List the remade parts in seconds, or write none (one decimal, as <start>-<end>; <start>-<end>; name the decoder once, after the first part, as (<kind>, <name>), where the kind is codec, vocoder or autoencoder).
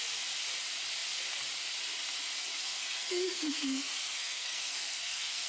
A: 2.5-5.5 (codec, SNAC)